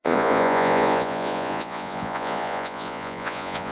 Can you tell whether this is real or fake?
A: fake